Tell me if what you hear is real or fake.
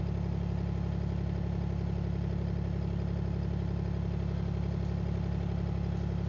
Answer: real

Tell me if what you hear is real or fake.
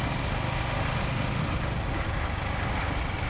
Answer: real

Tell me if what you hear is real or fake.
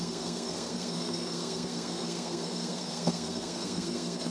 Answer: fake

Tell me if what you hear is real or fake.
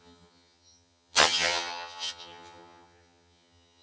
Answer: fake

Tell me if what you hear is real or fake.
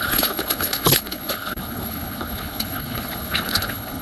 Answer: fake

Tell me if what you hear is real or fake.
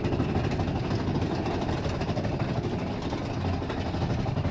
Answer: real